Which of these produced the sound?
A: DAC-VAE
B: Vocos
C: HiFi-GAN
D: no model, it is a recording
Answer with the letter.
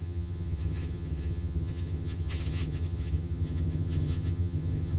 C